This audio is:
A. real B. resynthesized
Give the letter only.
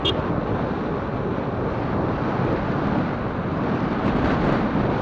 A